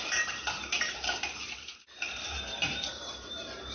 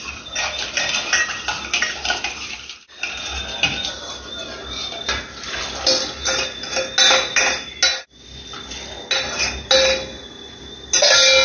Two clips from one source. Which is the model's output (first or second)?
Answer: first